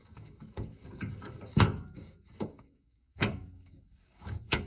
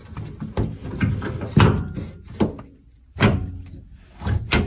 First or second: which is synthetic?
first